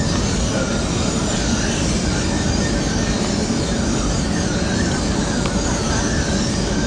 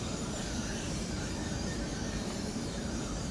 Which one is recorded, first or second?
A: first